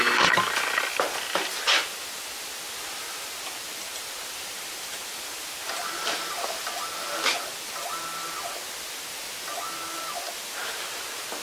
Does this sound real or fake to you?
real